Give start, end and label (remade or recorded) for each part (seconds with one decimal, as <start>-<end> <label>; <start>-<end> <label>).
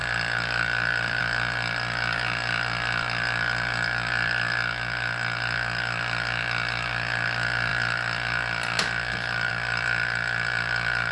0.0-11.1 recorded